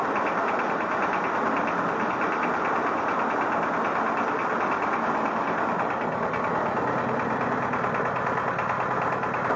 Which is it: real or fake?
real